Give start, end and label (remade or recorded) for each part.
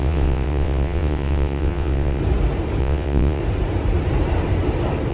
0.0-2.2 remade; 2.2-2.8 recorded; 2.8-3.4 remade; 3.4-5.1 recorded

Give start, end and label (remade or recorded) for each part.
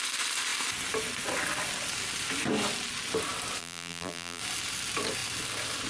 0.0-3.6 recorded; 3.6-4.4 remade; 4.4-5.9 recorded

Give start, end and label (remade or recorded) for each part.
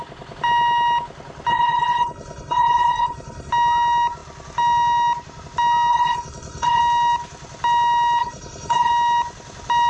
0.0-1.5 recorded; 1.5-3.5 remade; 3.5-5.9 recorded; 5.9-6.8 remade; 6.8-8.2 recorded; 8.2-8.9 remade; 8.9-9.9 recorded